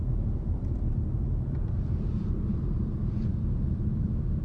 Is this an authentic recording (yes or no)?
no